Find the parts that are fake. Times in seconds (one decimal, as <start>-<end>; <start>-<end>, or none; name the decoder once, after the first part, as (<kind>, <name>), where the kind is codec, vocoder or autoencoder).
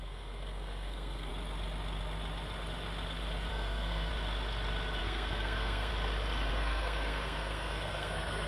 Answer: 0.0-1.3 (codec, SNAC); 3.5-4.1; 5.0-5.9; 6.5-8.5